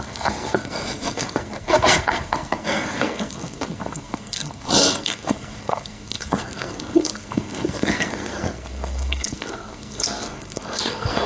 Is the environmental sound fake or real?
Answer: fake